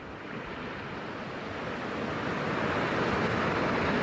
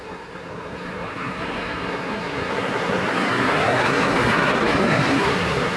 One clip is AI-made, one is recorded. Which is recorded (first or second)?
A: first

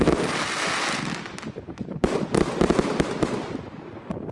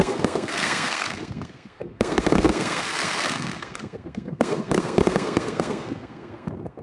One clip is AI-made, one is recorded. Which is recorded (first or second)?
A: first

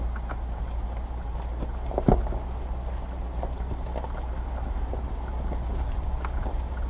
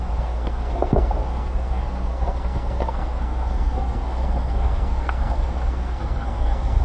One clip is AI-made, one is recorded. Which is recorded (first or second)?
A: first